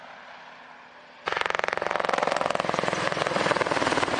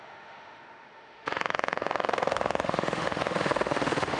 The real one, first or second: first